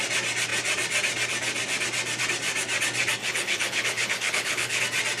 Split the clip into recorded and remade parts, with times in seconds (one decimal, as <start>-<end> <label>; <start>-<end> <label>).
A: 0.0-3.2 recorded; 3.2-4.8 remade; 4.8-5.2 recorded